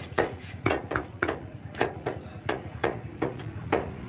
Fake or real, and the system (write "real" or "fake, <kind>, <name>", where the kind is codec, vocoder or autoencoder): fake, vocoder, Vocos